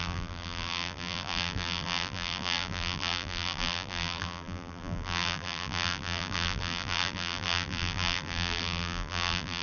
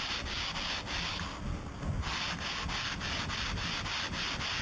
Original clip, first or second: second